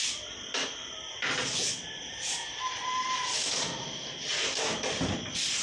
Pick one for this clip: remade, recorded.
remade